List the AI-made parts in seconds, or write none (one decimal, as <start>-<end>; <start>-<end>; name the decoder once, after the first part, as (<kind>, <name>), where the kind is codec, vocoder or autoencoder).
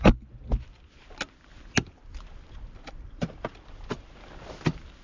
none